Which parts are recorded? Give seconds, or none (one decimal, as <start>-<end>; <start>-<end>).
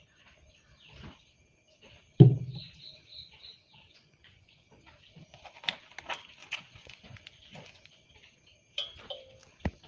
0.0-3.1; 4.8-6.4; 8.1-9.9